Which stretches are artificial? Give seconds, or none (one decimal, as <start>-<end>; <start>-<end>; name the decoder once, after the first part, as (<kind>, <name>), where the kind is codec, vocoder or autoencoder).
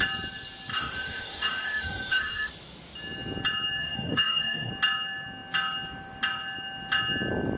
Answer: 0.7-2.5 (autoencoder, DAC-VAE); 3.8-4.7